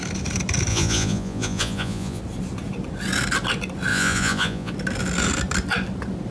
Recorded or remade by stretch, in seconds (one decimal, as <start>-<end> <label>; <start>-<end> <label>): 0.0-0.7 recorded; 0.7-2.2 remade; 2.2-3.9 recorded; 3.9-4.7 remade; 4.7-6.3 recorded